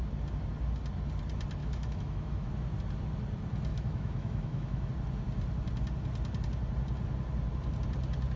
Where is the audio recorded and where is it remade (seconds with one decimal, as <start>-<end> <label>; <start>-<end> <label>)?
0.0-1.6 recorded; 1.6-2.5 remade; 2.5-3.7 recorded; 3.7-4.9 remade; 4.9-8.4 recorded